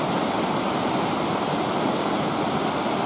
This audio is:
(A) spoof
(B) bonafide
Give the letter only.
B